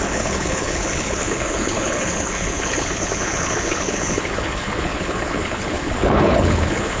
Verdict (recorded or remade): remade